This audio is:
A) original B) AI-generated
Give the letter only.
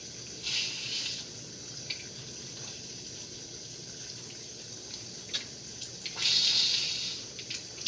A